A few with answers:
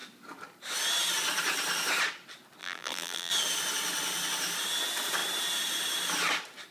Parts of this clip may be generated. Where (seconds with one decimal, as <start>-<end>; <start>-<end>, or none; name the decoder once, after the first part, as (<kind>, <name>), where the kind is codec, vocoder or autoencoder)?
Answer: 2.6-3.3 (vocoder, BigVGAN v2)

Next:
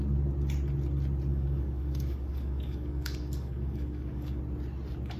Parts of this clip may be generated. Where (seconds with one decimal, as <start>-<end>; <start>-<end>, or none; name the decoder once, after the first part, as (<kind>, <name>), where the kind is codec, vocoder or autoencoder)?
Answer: 1.3-4.4 (codec, DAC)

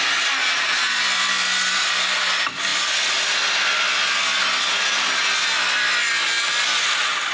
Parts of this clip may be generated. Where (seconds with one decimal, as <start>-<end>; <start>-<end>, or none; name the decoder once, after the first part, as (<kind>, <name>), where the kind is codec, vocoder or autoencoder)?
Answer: 0.4-1.0 (vocoder, Vocos)